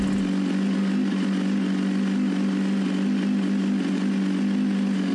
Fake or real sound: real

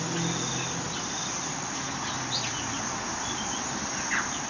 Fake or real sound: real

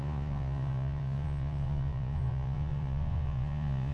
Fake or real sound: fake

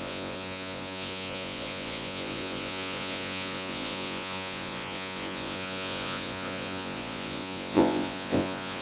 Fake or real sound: fake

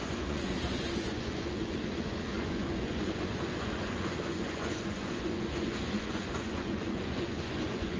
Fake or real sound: fake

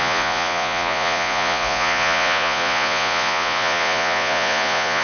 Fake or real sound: fake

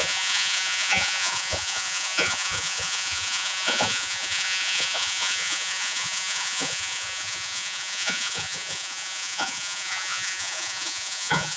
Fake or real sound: fake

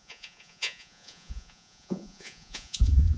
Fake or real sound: fake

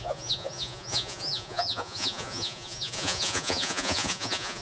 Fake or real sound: fake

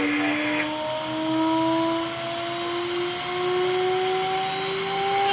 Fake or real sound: real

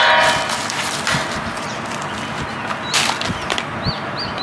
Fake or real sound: real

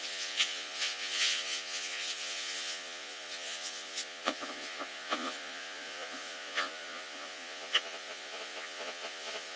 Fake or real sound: fake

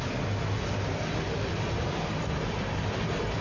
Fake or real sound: real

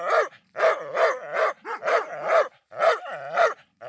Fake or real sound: real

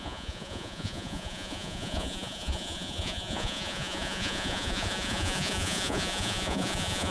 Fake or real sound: fake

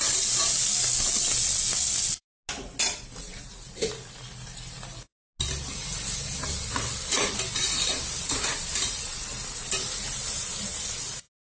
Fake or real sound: real